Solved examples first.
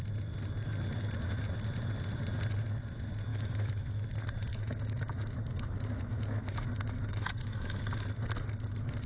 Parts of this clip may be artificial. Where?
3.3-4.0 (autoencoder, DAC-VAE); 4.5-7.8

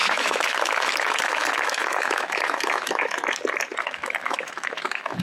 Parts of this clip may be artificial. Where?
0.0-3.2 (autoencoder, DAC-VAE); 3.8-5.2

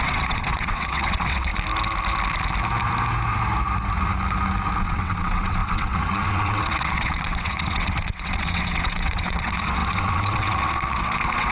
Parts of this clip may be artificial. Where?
0.0-1.5 (vocoder, WaveNeXt); 4.8-11.5

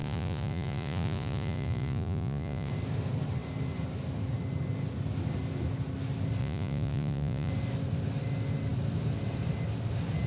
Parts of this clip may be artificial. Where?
0.0-2.7 (vocoder, Vocos); 6.4-7.5